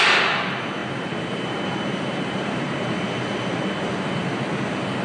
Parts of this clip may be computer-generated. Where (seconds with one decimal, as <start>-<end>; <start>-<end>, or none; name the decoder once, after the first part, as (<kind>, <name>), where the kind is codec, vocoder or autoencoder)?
0.8-3.6 (vocoder, BigVGAN v2)